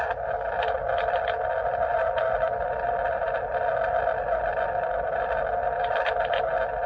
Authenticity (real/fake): real